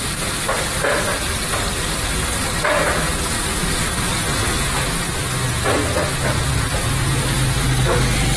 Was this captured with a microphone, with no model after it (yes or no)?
yes